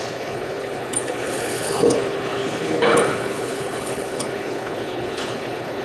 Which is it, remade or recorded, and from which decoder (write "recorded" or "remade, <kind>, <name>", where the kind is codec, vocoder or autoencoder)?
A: remade, codec, HILCodec